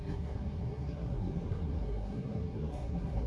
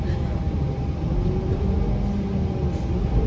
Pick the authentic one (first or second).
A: second